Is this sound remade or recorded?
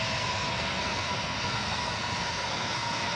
remade